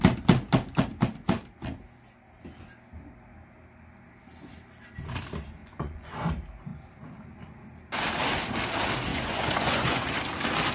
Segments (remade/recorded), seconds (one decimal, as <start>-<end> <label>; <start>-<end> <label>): 0.0-5.6 recorded; 5.6-6.3 remade; 6.3-9.1 recorded; 9.1-10.0 remade; 10.0-10.7 recorded